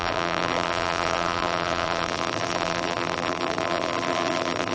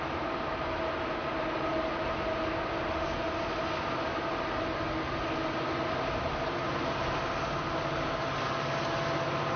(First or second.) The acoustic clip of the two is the second